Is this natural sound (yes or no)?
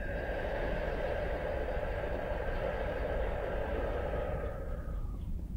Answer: no